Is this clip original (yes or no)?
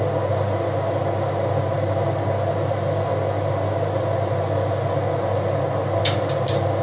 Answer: yes